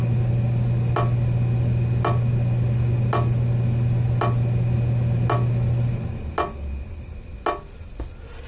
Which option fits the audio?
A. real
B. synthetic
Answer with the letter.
A